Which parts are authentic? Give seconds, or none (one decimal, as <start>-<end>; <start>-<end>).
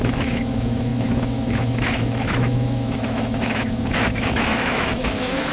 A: none